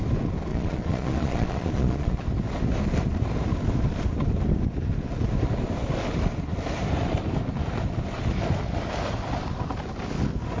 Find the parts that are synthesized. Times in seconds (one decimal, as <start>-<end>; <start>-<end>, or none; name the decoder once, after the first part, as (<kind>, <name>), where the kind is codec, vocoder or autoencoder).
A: 0.5-2.2 (vocoder, Vocos)